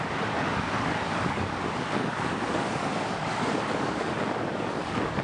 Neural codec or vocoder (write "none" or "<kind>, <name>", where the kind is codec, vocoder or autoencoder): codec, DAC